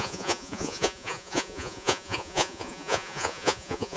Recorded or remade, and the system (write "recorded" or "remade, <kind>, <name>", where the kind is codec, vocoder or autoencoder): remade, vocoder, Vocos